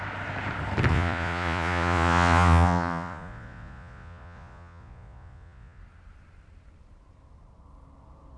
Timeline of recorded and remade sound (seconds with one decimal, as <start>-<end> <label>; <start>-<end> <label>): 0.0-0.9 recorded; 0.9-5.8 remade; 5.8-8.4 recorded